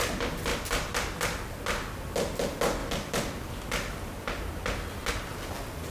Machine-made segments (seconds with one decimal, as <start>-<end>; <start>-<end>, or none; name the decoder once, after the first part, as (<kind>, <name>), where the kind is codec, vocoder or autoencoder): none